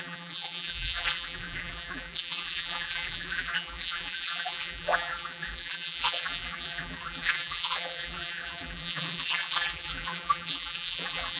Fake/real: fake